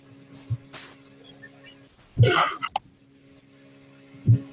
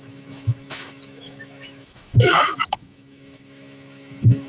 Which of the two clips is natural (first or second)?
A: first